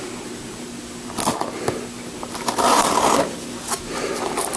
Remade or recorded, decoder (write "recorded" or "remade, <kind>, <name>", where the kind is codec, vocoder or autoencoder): recorded